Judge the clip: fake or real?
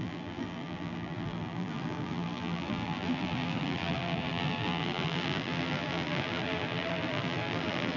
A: fake